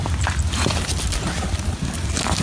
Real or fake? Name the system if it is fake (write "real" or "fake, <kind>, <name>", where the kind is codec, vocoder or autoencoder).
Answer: real